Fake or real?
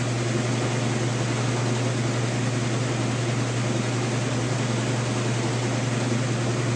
real